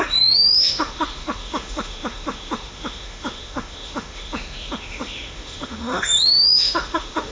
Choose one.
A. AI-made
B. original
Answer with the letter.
A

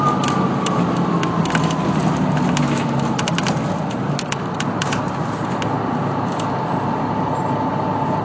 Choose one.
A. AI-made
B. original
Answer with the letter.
B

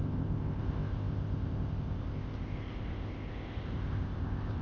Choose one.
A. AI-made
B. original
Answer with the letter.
A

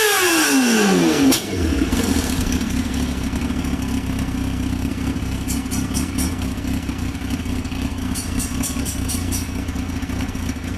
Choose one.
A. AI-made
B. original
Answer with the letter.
A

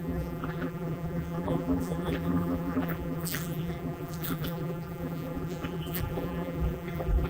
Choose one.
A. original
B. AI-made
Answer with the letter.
B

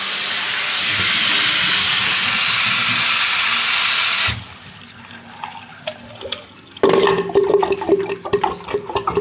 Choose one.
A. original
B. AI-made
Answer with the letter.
A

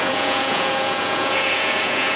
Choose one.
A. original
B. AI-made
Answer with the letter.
B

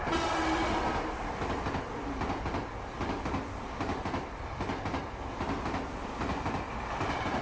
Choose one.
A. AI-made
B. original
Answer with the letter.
B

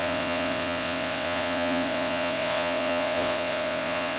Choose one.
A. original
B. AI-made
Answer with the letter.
B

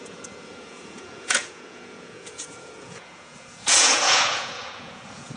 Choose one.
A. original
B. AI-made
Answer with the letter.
B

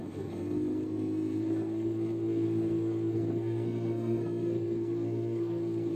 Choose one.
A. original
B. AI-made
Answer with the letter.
B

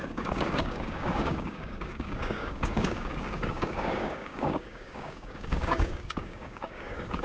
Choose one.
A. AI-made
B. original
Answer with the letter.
A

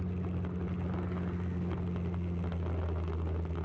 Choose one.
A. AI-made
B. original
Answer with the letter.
B